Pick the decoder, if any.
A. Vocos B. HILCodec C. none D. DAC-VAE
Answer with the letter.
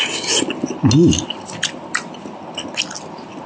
C